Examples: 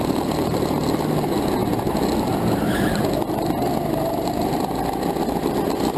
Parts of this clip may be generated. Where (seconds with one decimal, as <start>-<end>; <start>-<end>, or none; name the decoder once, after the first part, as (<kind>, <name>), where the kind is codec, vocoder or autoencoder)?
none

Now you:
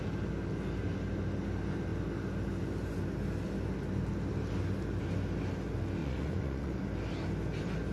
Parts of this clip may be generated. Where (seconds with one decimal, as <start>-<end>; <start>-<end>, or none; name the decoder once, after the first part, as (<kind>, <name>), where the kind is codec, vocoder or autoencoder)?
6.0-6.8 (vocoder, Vocos)

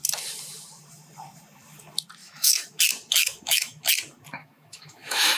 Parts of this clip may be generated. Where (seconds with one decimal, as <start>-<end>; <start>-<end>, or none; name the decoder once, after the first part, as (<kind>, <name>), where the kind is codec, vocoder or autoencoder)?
2.2-2.8 (autoencoder, DAC-VAE); 3.2-3.9; 4.4-5.4

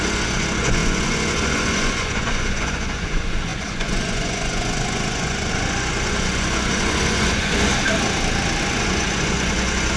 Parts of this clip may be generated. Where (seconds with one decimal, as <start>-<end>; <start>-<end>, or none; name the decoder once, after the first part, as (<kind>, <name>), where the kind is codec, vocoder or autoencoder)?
0.0-7.7 (vocoder, Vocos); 8.6-10.0

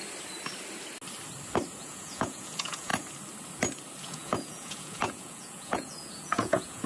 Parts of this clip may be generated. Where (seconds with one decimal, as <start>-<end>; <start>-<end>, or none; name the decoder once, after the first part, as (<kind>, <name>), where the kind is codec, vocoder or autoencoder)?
1.8-2.9 (vocoder, Vocos); 4.0-6.9